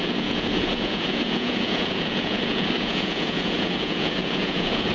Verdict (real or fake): fake